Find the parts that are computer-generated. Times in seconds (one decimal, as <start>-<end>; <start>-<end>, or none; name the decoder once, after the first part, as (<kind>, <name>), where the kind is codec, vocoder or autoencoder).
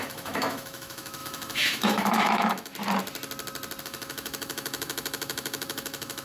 0.0-2.7 (autoencoder, DAC-VAE); 3.8-6.2